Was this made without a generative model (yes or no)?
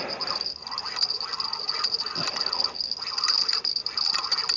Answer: yes